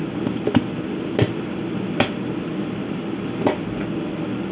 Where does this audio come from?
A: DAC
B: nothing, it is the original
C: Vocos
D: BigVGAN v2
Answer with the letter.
B